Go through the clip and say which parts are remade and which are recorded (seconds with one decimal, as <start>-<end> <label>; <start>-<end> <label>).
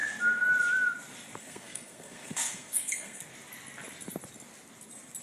0.0-1.4 recorded; 1.4-3.2 remade; 3.2-5.2 recorded